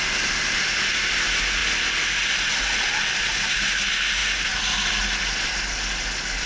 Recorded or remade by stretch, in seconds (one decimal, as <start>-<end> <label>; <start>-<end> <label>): 0.0-6.5 recorded